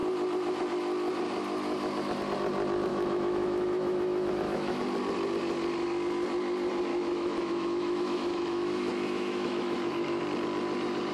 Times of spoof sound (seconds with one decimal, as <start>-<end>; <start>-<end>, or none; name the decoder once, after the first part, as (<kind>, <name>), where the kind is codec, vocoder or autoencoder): 2.9-4.8 (autoencoder, DAC-VAE); 6.9-10.2